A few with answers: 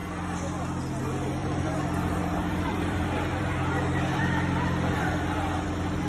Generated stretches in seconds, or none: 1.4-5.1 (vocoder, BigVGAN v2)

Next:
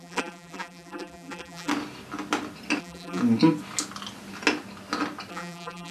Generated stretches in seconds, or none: 0.0-1.7 (vocoder, BigVGAN v2); 2.8-3.2; 5.3-5.9

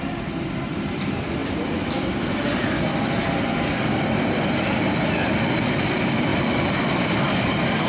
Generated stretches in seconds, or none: 0.0-1.4 (vocoder, BigVGAN v2); 2.3-7.9

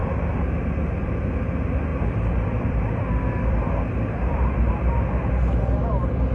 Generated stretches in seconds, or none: 0.0-1.3 (vocoder, BigVGAN v2); 1.9-4.7

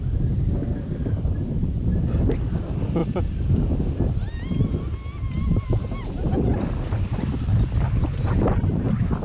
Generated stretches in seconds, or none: 6.5-8.3 (vocoder, BigVGAN v2)